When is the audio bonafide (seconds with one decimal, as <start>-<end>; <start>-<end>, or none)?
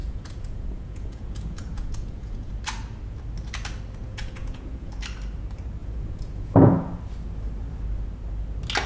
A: 2.5-4.0; 4.9-5.8; 7.0-8.9